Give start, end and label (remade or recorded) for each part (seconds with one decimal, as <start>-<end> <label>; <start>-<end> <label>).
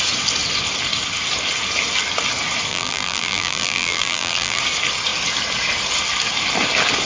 0.0-2.7 recorded; 2.7-4.6 remade; 4.6-7.1 recorded